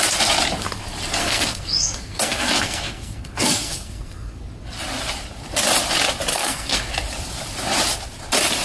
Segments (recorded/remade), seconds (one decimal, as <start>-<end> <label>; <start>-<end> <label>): 0.0-1.2 recorded; 1.2-4.4 remade; 4.4-6.3 recorded; 6.3-6.9 remade; 6.9-8.6 recorded